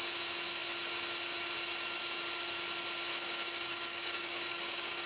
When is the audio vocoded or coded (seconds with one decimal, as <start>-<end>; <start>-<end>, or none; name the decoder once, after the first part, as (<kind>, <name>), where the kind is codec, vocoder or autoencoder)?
3.1-5.1 (codec, DAC)